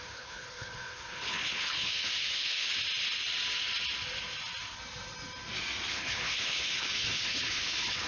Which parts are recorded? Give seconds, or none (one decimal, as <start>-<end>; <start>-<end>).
2.7-5.9

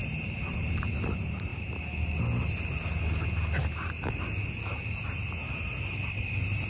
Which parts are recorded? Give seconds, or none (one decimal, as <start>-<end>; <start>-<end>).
0.0-0.5; 1.5-3.6; 4.4-6.2

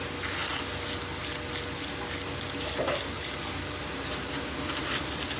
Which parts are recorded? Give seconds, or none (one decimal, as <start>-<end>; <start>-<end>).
0.0-5.4

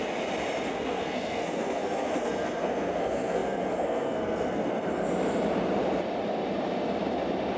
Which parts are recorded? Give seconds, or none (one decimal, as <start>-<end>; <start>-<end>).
0.0-0.7; 5.0-7.6

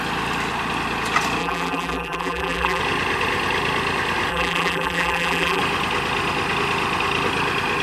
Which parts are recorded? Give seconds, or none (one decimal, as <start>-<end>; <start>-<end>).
0.0-1.4; 2.8-4.3; 5.6-7.8